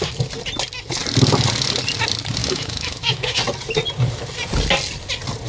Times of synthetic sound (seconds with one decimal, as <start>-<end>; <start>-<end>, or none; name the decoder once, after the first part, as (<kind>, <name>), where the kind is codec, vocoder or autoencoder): 2.4-3.4 (autoencoder, DAC-VAE)